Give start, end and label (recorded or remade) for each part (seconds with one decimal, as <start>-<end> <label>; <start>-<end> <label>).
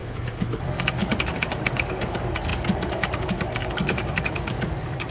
0.0-5.1 remade